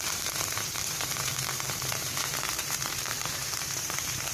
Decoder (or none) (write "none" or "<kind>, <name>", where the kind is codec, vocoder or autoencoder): vocoder, BigVGAN v2